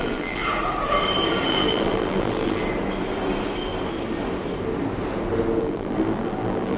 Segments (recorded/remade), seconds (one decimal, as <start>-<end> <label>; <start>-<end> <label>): 0.0-0.4 remade; 0.4-1.5 recorded; 1.5-2.6 remade; 2.6-5.6 recorded; 5.6-6.8 remade